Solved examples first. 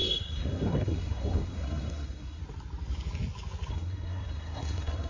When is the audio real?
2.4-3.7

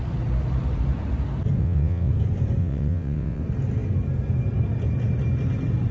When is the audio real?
0.0-1.6; 2.1-2.6; 3.4-5.9

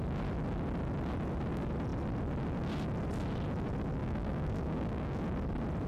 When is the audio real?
0.0-4.0; 5.2-5.9